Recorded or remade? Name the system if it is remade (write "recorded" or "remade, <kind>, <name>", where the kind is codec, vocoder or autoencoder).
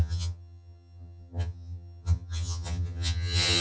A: remade, vocoder, HiFi-GAN